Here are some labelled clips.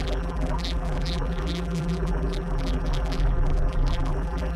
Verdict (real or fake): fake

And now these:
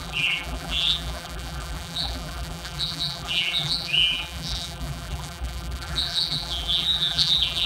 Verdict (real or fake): fake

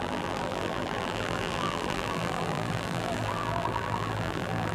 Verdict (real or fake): fake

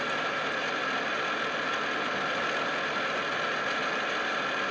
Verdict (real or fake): real